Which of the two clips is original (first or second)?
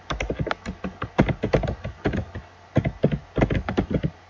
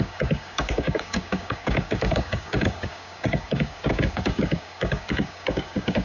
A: first